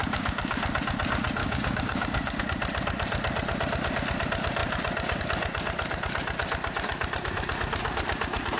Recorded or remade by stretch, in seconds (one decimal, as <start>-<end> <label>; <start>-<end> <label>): 0.0-0.6 remade; 0.6-1.4 recorded; 1.4-2.4 remade; 2.4-8.6 recorded